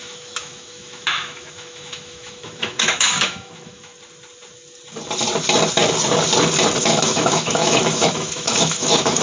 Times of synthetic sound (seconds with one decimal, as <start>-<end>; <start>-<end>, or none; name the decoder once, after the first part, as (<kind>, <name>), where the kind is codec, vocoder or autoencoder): 0.0-3.9 (autoencoder, DAC-VAE); 6.8-9.2